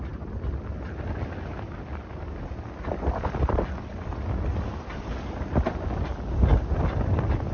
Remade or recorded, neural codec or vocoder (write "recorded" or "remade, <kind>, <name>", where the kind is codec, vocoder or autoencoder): recorded